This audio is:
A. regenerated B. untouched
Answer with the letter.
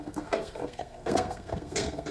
A